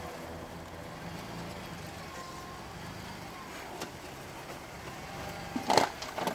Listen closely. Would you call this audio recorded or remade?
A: recorded